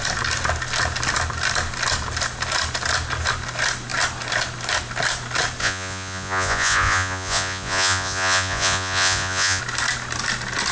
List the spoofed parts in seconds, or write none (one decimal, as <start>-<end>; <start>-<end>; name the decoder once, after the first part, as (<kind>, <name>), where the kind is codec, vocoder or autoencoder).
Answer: 5.6-9.6 (vocoder, Vocos)